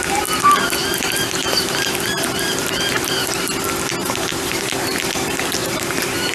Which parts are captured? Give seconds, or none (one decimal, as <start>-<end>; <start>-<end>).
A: 0.0-0.8; 3.4-4.0; 5.0-5.6